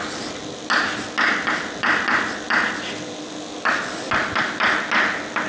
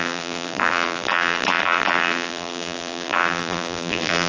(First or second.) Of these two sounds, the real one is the first